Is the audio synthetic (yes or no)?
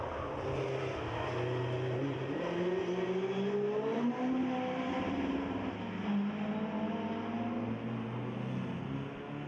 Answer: no